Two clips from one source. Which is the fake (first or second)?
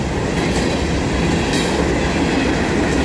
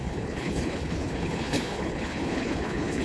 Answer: second